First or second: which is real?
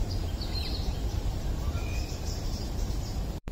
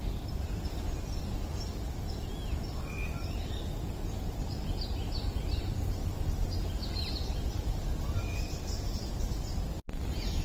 second